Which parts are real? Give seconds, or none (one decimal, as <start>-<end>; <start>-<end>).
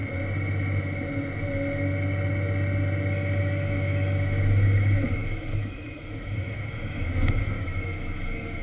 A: 0.0-3.4